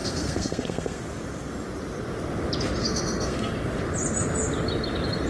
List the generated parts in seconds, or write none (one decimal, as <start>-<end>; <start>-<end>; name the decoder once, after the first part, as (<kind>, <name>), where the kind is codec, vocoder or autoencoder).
0.0-1.0 (codec, SNAC); 2.8-3.5